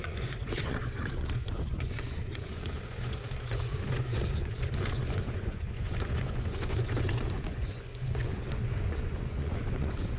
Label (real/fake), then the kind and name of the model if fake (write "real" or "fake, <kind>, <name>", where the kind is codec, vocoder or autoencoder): fake, vocoder, Vocos